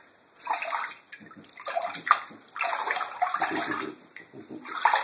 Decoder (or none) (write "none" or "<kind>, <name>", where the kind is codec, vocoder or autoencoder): none